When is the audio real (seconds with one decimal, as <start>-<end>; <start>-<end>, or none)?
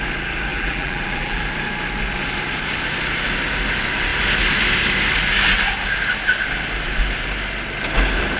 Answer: 0.0-0.5; 1.4-8.4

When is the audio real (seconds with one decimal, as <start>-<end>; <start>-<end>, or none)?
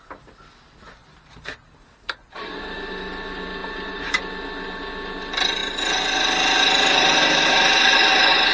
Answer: 0.0-1.0; 2.6-3.6; 4.2-8.5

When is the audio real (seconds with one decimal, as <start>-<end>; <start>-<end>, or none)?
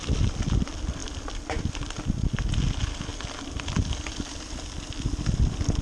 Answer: 0.0-5.8